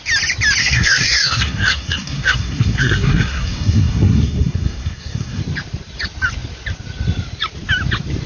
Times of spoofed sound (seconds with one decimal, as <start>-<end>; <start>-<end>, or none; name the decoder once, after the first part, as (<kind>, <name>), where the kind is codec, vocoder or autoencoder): 0.6-5.4 (codec, SNAC)